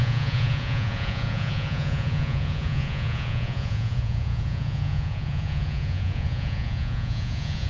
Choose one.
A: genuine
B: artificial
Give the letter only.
B